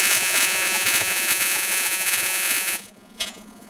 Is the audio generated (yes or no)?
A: yes